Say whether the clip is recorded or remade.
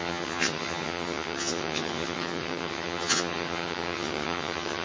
remade